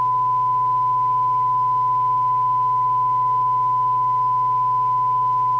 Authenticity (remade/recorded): remade